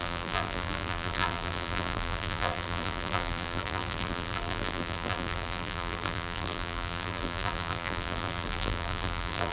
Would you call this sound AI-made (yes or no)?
yes